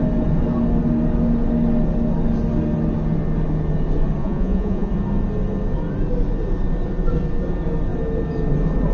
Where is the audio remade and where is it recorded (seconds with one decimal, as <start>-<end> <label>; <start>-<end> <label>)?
0.0-4.2 recorded; 4.2-4.9 remade; 4.9-8.9 recorded